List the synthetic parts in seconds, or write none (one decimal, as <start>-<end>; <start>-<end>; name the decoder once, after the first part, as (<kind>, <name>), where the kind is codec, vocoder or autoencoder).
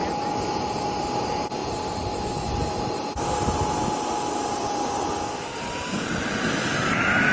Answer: none